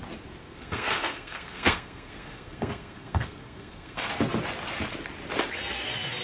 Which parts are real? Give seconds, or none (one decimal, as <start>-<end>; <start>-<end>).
0.0-0.4; 4.1-6.2